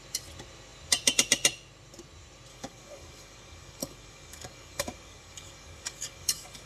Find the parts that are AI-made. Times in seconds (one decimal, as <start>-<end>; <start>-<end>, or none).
2.5-6.7